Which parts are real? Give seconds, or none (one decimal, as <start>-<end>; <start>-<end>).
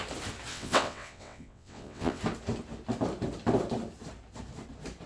0.0-0.5; 2.2-5.1